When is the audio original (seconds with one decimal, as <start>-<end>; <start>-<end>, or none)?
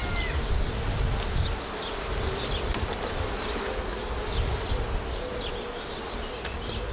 0.0-6.9